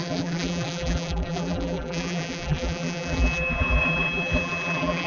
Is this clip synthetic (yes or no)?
yes